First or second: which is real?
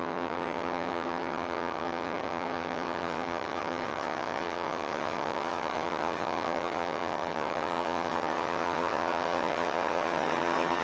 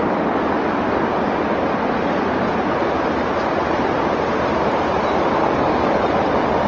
second